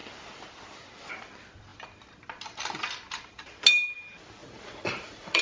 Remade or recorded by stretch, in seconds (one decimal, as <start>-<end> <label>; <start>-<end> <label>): 0.0-4.4 recorded; 4.4-5.4 remade